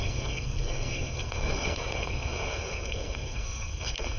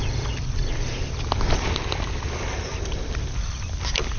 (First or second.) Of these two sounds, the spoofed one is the first